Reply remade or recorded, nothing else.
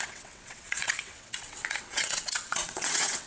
remade